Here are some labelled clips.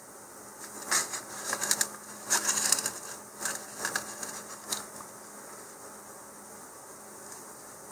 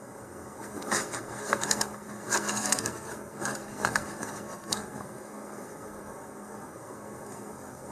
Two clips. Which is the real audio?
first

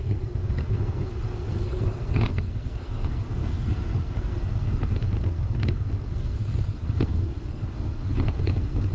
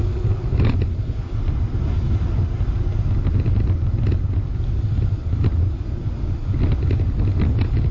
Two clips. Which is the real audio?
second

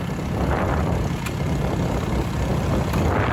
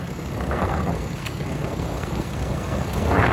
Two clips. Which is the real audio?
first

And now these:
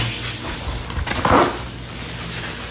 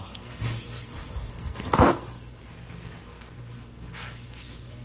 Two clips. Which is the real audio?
first